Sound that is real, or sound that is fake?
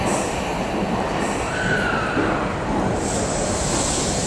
real